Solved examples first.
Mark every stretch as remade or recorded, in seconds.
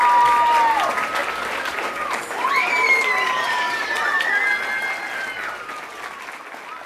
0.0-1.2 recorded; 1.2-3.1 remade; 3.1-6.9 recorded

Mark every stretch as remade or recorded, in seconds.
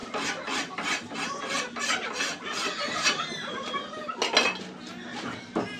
0.0-1.4 remade; 1.4-2.8 recorded; 2.8-3.9 remade; 3.9-5.8 recorded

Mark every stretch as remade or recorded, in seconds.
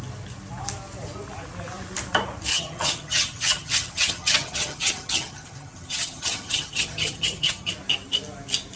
0.0-2.5 recorded; 2.5-7.7 remade; 7.7-8.8 recorded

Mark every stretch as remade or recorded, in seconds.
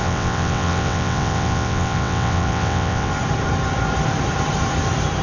0.0-3.1 remade; 3.1-5.2 recorded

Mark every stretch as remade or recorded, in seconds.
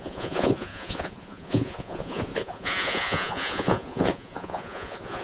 0.0-5.2 remade